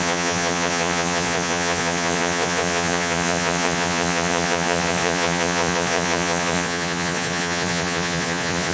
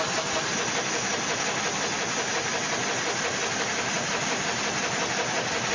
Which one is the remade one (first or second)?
first